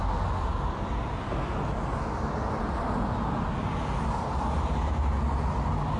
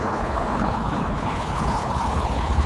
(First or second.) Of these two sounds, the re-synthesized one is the second